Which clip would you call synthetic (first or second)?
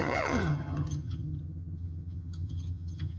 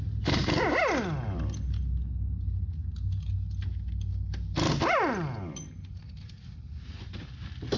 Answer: first